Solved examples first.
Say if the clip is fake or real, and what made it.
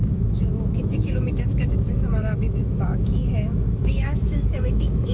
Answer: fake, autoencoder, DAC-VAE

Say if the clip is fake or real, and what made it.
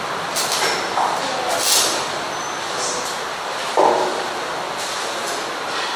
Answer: real